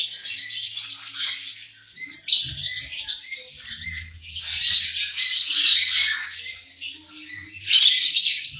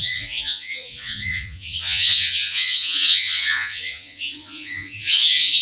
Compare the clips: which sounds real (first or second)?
first